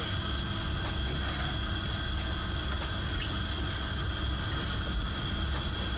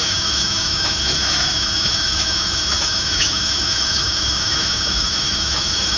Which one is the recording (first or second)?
first